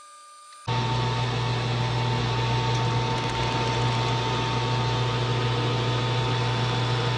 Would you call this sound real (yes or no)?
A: yes